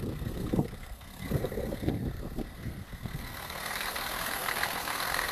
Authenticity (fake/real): fake